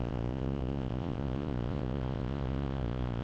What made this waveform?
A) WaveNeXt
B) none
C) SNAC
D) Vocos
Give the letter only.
D